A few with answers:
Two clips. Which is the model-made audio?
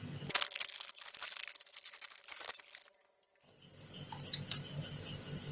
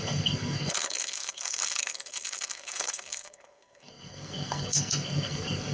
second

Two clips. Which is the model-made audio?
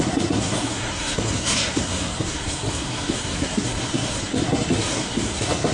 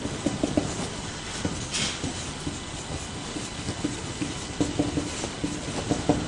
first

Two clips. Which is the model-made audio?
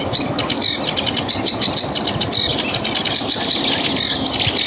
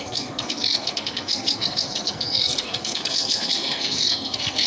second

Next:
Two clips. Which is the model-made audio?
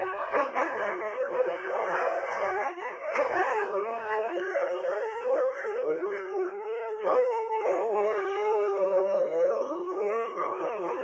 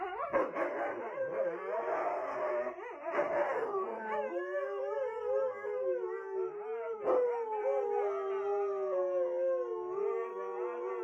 first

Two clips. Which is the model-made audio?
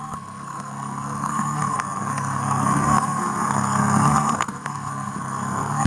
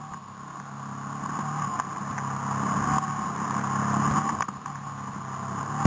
first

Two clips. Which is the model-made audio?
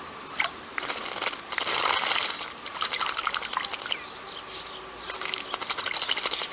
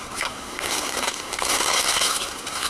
second